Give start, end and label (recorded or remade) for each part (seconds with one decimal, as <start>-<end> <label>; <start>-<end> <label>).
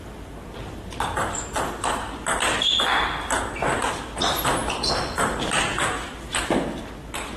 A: 0.0-7.4 recorded